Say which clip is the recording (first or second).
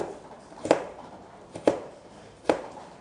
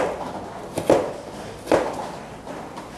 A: second